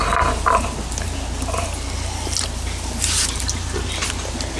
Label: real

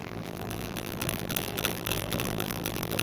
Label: fake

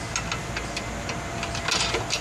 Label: real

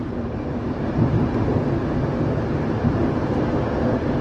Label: real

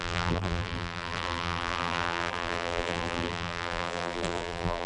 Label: fake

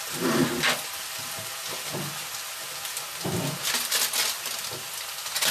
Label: real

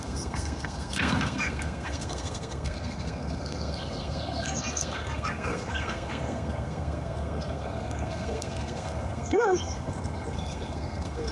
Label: fake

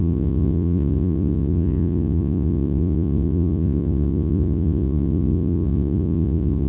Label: fake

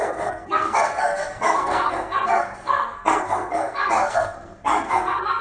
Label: fake